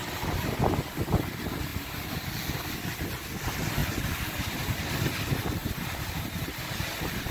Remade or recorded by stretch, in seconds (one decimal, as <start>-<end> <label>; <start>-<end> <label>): 0.0-1.7 recorded; 1.7-2.3 remade; 2.3-3.8 recorded; 3.8-4.9 remade; 4.9-5.6 recorded; 5.6-7.3 remade

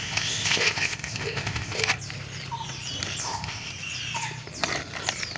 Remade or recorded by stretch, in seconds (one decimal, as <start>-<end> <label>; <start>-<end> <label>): 0.0-1.8 remade; 1.8-3.2 recorded; 3.2-3.7 remade; 3.7-5.4 recorded

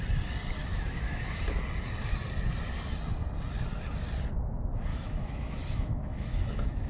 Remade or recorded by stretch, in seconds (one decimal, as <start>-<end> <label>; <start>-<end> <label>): 0.0-0.6 recorded; 0.6-1.4 remade; 1.4-4.9 recorded; 4.9-6.9 remade

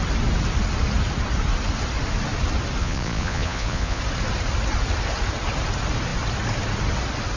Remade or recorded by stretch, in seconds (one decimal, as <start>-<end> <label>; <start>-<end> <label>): 0.0-2.8 recorded; 2.8-4.0 remade; 4.0-7.4 recorded

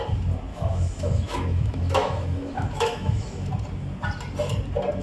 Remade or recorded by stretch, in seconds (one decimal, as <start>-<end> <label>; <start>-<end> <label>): 0.0-0.5 recorded; 0.5-3.5 remade; 3.5-5.0 recorded

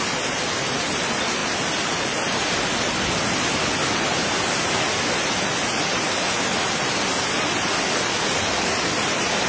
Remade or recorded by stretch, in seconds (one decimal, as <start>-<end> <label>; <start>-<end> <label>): 0.0-9.5 recorded

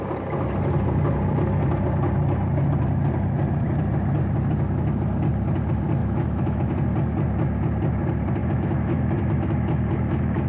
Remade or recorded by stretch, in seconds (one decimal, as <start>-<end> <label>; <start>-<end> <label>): 0.0-6.0 recorded; 6.0-6.7 remade; 6.7-8.4 recorded; 8.4-10.5 remade

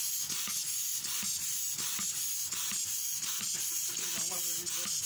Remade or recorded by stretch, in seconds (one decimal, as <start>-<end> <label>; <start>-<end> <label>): 0.0-5.1 recorded